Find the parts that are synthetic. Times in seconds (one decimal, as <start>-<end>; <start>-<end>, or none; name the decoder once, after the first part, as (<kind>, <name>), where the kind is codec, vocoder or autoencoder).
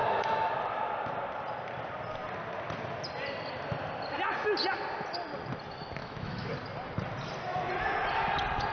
0.0-0.5 (autoencoder, DAC-VAE); 6.0-6.5